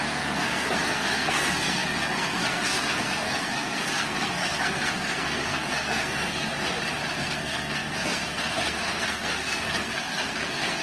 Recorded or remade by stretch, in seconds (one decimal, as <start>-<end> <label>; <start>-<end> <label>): 0.0-6.5 remade; 6.5-7.2 recorded; 7.2-10.8 remade

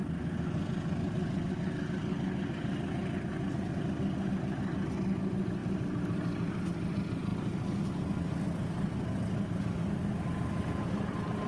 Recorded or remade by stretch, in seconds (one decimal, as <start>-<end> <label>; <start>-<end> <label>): 0.0-5.6 recorded; 5.6-6.7 remade; 6.7-11.5 recorded

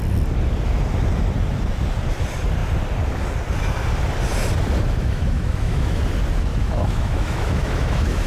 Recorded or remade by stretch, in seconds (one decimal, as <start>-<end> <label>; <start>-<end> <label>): 0.0-5.0 recorded; 5.0-6.0 remade; 6.0-6.5 recorded; 6.5-8.3 remade

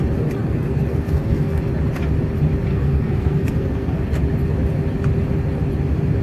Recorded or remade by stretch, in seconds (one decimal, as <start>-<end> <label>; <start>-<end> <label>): 0.0-0.4 recorded; 0.4-1.6 remade; 1.6-2.7 recorded; 2.7-4.2 remade; 4.2-6.2 recorded